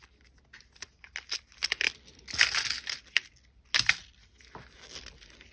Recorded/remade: recorded